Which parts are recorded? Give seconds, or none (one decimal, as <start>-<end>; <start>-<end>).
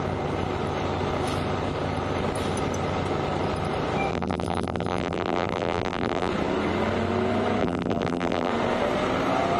0.0-4.1; 6.3-7.6; 8.5-9.6